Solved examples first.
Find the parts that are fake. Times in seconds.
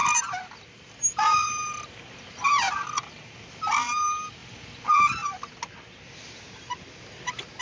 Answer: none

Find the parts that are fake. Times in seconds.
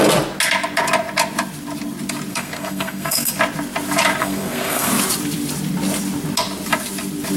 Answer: 2.3-3.3 (codec, SNAC); 4.2-4.9